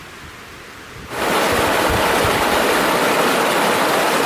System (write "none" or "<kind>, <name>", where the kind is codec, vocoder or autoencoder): none